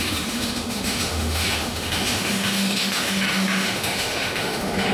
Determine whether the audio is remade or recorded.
remade